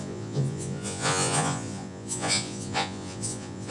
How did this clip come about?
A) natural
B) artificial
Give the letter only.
B